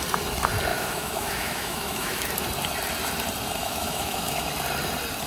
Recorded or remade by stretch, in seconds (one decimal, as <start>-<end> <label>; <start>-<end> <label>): 0.0-0.7 recorded; 0.7-2.3 remade; 2.3-3.6 recorded; 3.6-4.5 remade; 4.5-5.3 recorded